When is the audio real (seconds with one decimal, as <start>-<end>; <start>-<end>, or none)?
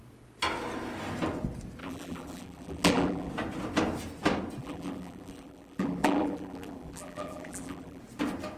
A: 0.0-1.8; 3.3-4.6; 8.0-8.6